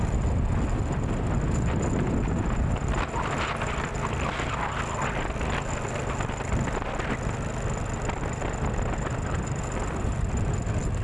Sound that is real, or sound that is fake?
real